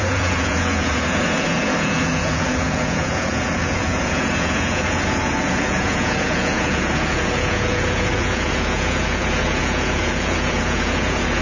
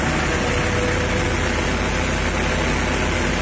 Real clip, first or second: second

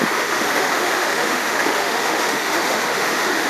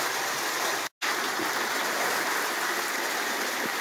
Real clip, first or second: second